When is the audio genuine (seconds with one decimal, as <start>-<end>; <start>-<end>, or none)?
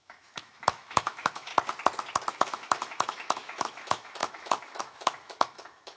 1.5-2.3